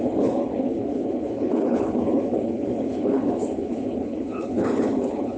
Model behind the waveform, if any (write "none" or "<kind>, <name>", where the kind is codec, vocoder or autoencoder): codec, HILCodec